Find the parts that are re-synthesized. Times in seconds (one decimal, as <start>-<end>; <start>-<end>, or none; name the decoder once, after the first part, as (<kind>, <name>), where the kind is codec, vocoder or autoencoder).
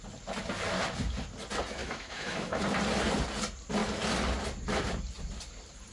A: 1.8-2.6 (autoencoder, DAC-VAE)